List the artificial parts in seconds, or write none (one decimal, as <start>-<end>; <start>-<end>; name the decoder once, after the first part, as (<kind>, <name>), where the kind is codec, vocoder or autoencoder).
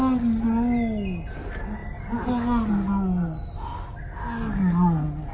none